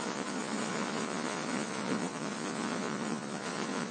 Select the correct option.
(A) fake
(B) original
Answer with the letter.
A